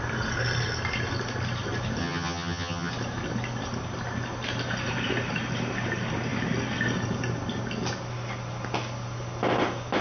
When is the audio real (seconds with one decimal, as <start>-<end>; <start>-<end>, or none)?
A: 0.0-2.0; 2.9-10.0